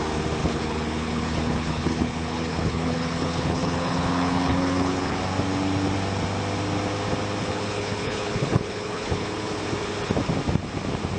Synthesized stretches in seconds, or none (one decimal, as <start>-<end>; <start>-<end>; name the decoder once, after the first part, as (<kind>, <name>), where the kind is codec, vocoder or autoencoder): 0.4-5.2 (codec, HILCodec); 7.4-9.6